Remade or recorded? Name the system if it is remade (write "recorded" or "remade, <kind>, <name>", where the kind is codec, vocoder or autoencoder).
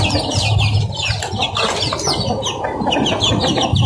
recorded